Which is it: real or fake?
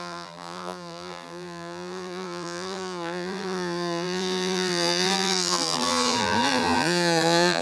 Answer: fake